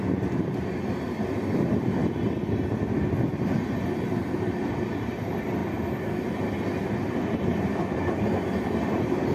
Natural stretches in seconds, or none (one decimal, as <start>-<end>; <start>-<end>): 0.0-9.3